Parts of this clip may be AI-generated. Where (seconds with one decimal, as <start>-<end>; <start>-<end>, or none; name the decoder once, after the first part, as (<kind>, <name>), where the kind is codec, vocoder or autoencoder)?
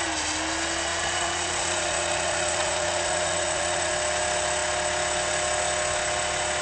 0.9-3.9 (vocoder, Vocos)